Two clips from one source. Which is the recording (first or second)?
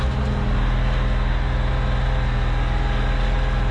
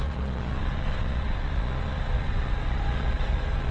first